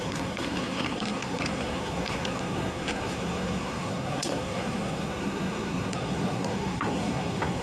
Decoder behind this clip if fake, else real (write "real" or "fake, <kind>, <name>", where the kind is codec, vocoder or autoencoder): fake, codec, SNAC